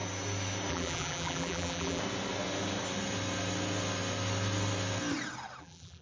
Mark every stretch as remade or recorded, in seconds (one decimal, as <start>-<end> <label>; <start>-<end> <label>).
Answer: 0.0-0.7 recorded; 0.7-2.0 remade; 2.0-5.6 recorded; 5.6-6.0 remade